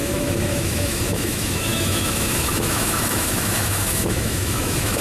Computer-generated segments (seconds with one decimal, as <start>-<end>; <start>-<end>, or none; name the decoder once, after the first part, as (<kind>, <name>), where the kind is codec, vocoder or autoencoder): 0.0-5.0 (autoencoder, DAC-VAE)